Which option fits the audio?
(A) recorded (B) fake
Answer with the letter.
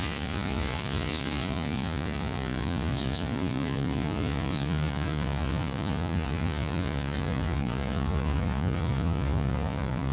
B